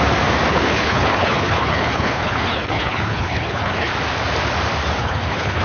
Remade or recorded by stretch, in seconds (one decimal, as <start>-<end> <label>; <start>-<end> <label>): 0.0-0.5 recorded; 0.5-3.9 remade; 3.9-5.0 recorded; 5.0-5.6 remade